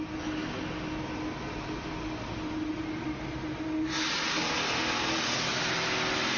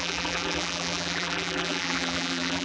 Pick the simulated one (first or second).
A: second